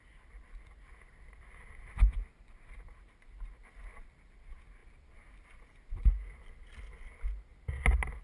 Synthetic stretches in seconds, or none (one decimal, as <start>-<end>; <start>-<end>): none